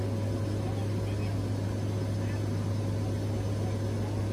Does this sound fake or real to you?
real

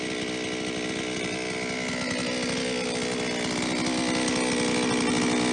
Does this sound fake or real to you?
real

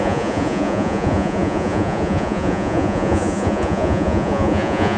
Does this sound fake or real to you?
fake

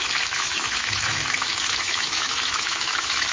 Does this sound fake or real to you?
fake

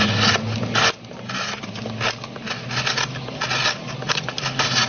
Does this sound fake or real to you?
real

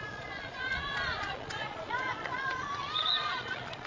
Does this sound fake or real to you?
fake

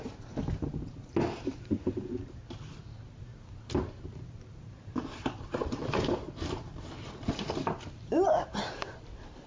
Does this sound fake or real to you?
fake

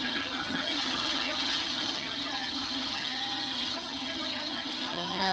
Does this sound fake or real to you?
fake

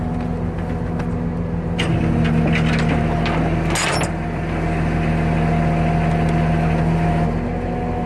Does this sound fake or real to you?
real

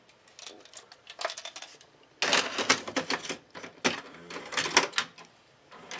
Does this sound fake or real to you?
real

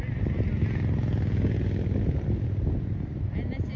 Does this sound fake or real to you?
real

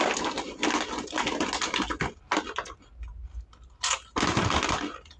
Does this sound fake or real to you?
real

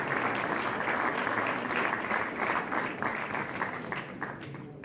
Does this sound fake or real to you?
real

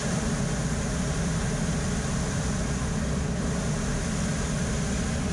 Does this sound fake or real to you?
real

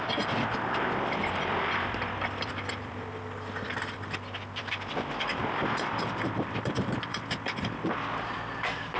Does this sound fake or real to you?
fake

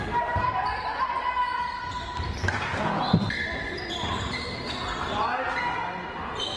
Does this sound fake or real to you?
real